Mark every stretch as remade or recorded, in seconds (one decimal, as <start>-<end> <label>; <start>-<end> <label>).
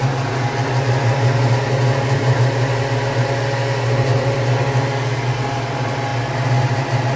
0.0-7.2 recorded